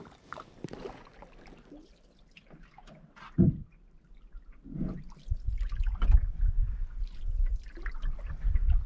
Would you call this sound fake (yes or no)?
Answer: no